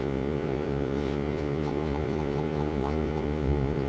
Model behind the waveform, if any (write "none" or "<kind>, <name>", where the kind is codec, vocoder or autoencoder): vocoder, Vocos